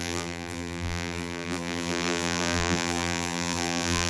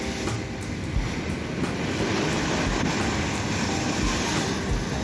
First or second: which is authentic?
second